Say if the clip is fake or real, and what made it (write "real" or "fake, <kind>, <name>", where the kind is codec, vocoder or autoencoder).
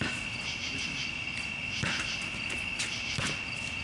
fake, vocoder, BigVGAN v2